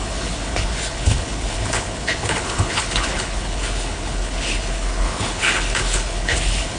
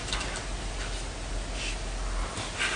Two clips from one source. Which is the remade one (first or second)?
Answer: first